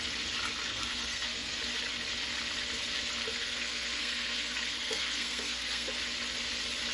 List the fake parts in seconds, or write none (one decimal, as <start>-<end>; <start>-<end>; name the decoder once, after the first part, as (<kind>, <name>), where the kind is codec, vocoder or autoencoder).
0.7-1.6 (codec, SNAC); 3.2-5.9